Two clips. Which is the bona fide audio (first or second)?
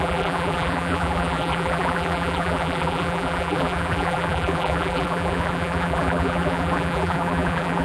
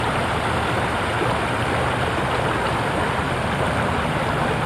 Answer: second